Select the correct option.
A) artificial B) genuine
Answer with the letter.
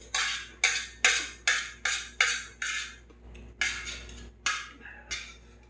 B